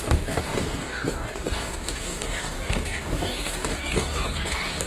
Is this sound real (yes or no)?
no